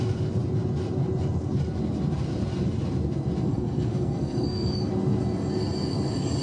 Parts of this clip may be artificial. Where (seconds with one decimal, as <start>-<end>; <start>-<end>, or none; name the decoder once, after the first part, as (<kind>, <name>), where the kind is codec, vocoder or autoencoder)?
3.5-4.9 (codec, SNAC)